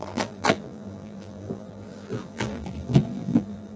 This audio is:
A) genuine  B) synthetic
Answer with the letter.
B